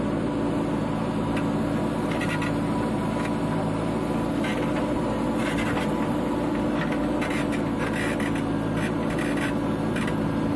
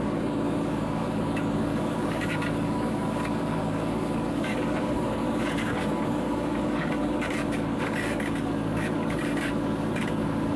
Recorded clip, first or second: first